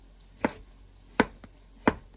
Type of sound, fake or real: real